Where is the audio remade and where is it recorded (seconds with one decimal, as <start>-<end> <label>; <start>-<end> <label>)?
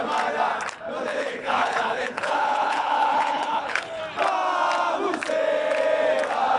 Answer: 0.0-1.1 recorded; 1.1-4.0 remade; 4.0-6.6 recorded